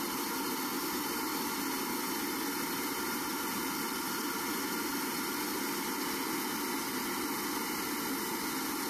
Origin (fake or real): real